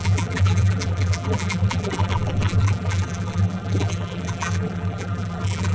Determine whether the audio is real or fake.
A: fake